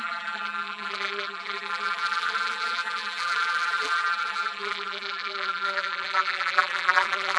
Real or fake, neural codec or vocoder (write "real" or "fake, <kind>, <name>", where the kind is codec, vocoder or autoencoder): fake, vocoder, BigVGAN v2